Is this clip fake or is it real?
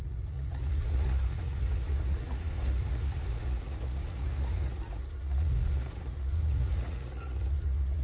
fake